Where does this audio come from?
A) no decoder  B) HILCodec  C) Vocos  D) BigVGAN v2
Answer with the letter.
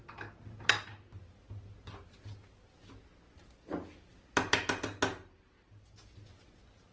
A